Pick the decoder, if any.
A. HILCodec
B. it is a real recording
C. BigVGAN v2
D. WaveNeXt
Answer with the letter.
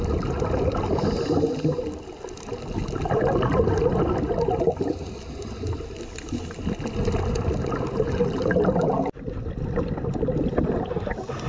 B